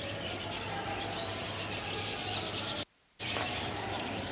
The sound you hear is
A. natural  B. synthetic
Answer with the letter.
A